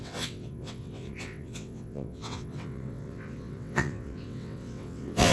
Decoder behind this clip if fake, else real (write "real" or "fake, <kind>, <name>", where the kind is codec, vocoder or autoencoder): fake, vocoder, WaveNeXt